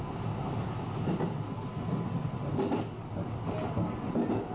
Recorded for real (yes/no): yes